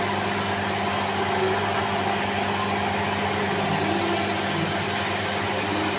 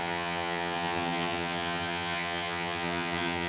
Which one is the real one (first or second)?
first